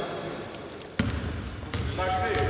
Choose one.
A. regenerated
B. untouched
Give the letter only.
B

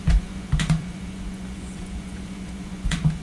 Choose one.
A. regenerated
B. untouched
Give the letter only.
A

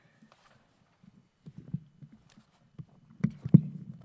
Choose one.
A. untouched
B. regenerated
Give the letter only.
A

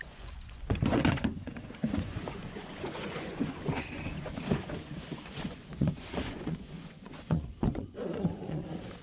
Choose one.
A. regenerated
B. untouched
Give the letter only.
A